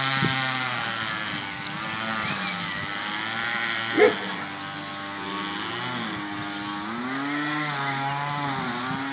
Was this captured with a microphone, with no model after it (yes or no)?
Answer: yes